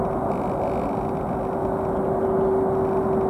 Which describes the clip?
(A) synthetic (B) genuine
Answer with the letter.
B